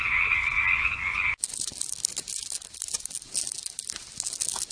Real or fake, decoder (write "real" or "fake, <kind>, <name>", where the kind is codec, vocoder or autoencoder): real